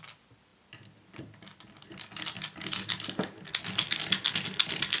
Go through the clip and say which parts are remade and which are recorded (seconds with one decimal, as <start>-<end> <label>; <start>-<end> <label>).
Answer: 0.0-5.0 recorded